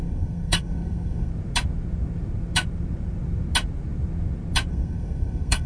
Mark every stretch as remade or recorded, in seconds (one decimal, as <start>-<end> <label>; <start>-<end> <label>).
0.0-1.3 remade; 1.3-4.7 recorded; 4.7-5.7 remade